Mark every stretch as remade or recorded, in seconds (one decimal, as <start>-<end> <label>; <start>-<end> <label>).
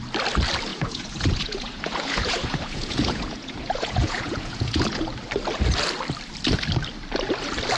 0.0-0.7 recorded; 0.7-5.0 remade; 5.0-7.8 recorded